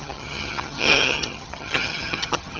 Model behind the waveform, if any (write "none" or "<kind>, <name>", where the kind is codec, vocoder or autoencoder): vocoder, HiFi-GAN